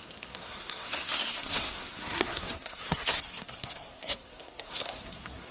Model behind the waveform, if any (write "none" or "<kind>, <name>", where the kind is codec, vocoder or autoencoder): codec, SNAC